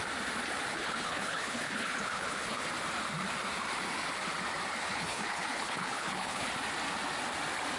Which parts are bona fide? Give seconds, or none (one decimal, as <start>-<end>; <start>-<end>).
0.0-0.7; 2.7-4.8; 6.5-7.8